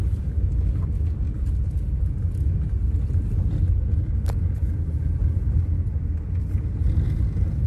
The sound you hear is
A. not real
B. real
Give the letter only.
B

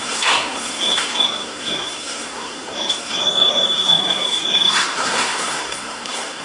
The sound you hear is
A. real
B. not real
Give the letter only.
B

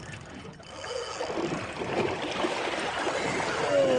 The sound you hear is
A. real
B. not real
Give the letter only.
A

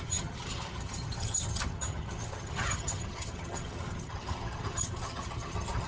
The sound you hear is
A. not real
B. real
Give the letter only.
A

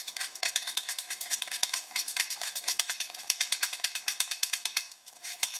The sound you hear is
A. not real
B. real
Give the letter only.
A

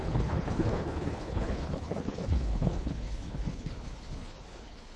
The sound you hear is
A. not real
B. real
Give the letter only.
A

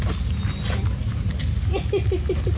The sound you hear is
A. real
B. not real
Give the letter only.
A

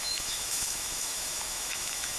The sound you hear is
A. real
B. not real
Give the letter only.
B